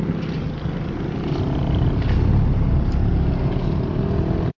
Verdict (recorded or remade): recorded